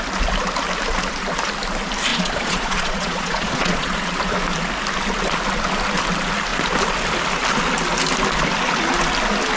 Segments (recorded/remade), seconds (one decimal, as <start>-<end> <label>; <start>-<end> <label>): 0.0-2.1 recorded; 2.1-4.2 remade; 4.2-9.6 recorded